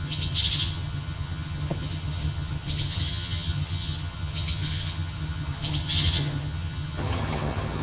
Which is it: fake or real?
fake